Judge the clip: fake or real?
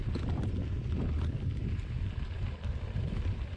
real